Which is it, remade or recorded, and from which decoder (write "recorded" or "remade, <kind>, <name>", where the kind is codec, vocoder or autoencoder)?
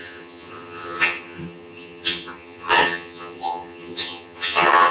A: remade, vocoder, HiFi-GAN